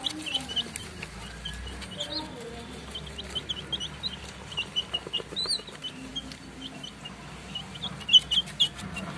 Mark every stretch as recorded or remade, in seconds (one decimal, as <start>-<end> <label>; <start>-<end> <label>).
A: 0.0-9.2 recorded